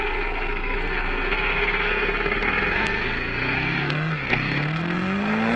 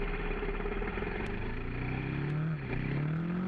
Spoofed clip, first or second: first